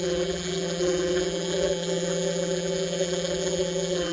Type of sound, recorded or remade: remade